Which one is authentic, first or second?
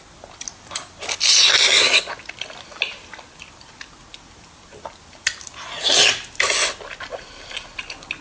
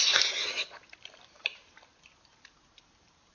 first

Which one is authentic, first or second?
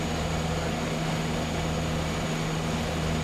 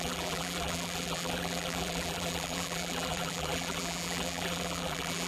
first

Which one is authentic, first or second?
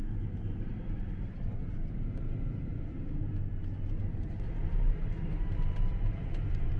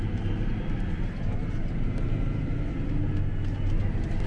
second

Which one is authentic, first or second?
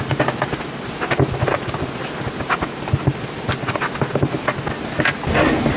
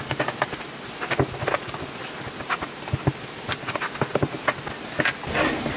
first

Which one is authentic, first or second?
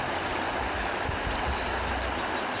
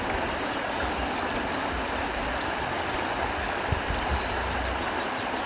first